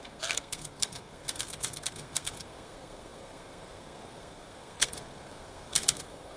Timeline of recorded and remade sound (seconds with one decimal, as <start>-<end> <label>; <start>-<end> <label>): 0.0-6.4 remade